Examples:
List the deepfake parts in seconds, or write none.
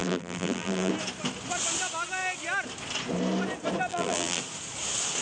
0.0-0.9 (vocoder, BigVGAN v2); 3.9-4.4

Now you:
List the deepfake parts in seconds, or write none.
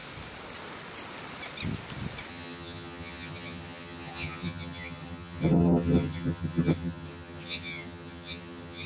2.3-8.9 (vocoder, HiFi-GAN)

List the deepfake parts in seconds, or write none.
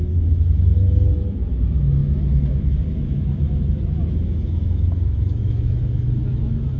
0.0-6.8 (autoencoder, DAC-VAE)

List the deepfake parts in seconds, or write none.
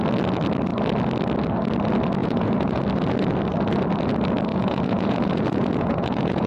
2.2-2.8 (vocoder, Vocos); 4.5-6.5